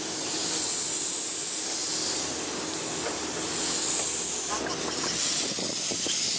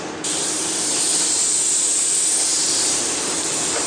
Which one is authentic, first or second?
first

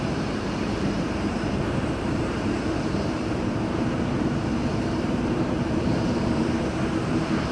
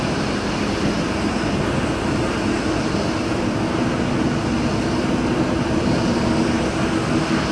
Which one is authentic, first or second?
second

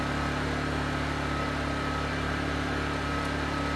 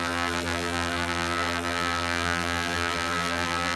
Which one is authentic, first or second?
first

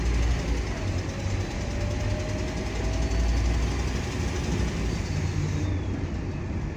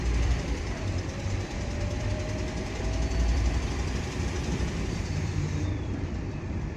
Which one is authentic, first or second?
first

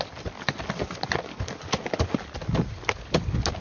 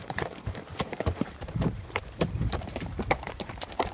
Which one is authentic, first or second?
first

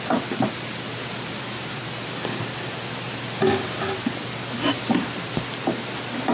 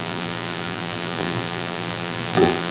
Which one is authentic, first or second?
first